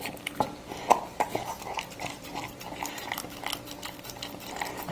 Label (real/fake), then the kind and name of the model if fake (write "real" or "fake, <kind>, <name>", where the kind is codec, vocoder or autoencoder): real